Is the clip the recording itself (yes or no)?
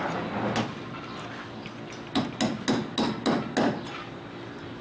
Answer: yes